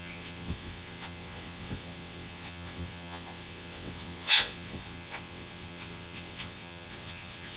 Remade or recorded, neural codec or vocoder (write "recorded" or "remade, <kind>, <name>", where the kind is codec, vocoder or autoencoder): remade, vocoder, WaveNeXt